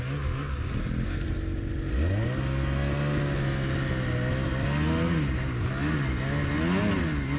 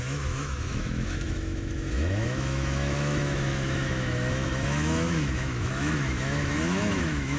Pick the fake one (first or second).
second